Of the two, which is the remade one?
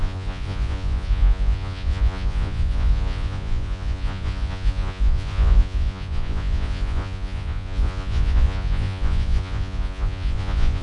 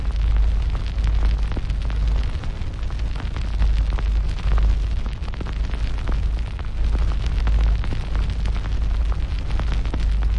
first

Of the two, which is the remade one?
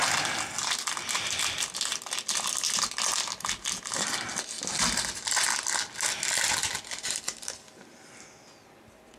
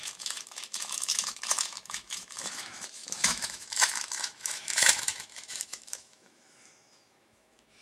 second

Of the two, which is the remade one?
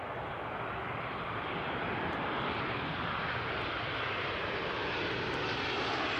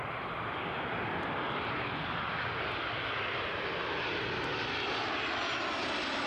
first